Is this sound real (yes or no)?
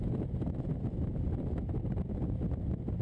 yes